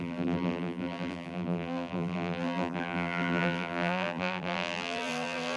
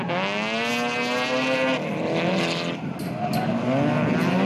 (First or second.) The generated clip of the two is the first